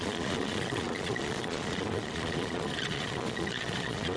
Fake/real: fake